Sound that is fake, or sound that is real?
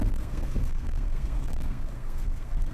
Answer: fake